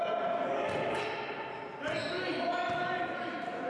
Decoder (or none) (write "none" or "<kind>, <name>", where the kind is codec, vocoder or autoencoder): none